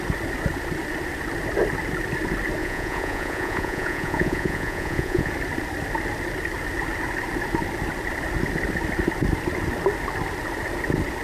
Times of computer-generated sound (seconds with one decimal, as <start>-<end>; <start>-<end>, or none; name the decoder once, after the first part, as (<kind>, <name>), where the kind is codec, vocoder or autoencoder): 2.6-5.3 (vocoder, Vocos)